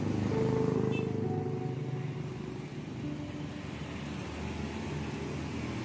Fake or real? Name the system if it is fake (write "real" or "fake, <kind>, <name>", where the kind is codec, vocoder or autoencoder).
real